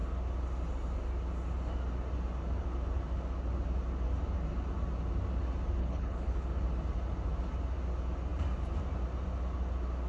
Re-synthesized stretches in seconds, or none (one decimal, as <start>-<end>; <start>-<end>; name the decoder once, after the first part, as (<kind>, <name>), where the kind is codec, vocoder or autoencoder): 5.8-6.5 (codec, HILCodec)